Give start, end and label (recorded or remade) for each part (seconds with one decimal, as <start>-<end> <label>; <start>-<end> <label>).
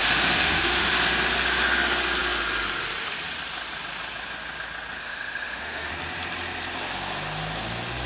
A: 0.0-0.9 remade; 0.9-5.0 recorded; 5.0-5.9 remade; 5.9-8.1 recorded